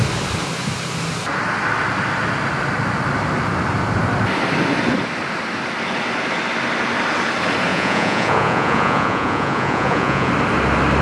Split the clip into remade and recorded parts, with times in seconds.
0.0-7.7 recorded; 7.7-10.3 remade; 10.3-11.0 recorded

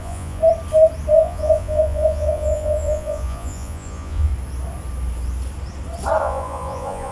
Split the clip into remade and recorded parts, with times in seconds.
0.0-0.4 remade; 0.4-1.1 recorded; 1.1-4.3 remade; 4.3-6.2 recorded; 6.2-7.1 remade

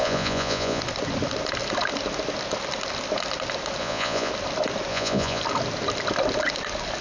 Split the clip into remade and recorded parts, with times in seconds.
0.0-0.8 remade; 0.8-3.8 recorded; 3.8-4.3 remade; 4.3-4.9 recorded; 4.9-5.4 remade; 5.4-7.0 recorded

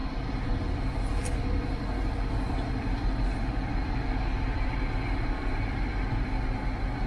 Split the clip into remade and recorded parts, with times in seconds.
0.0-7.1 recorded